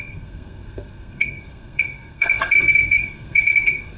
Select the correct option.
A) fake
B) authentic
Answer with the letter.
A